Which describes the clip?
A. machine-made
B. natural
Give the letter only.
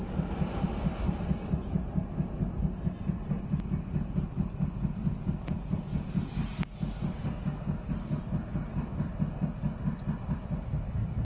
B